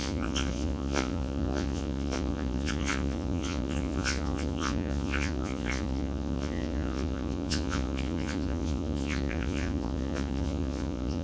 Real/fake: fake